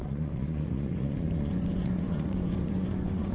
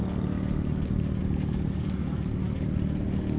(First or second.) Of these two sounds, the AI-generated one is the first